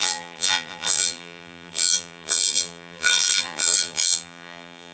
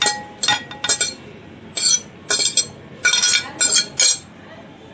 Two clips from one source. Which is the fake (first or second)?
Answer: first